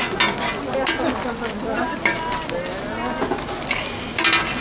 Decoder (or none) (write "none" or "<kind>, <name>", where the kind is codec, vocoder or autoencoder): none